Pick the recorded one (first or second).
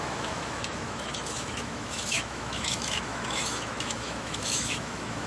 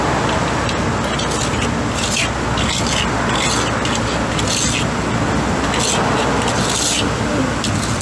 second